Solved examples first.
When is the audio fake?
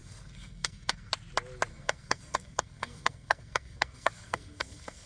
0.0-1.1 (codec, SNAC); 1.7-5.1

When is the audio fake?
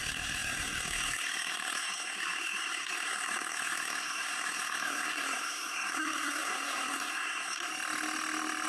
0.0-7.7 (codec, SNAC)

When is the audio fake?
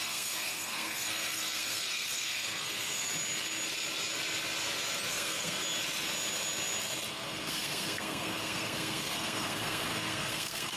0.0-3.1 (codec, SNAC); 5.1-5.6; 7.1-10.8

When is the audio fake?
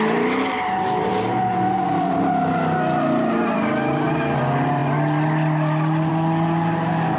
none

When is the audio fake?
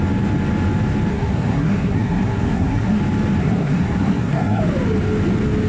1.1-3.0 (codec, SNAC); 3.4-4.6